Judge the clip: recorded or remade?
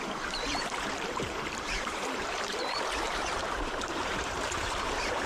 remade